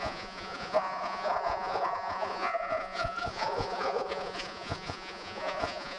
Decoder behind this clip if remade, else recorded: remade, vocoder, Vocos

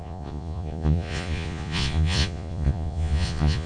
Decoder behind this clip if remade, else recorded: remade, vocoder, Vocos